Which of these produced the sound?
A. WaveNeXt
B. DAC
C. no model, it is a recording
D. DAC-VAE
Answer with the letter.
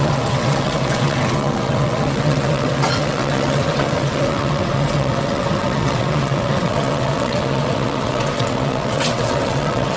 A